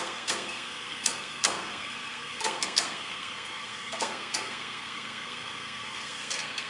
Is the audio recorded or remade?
remade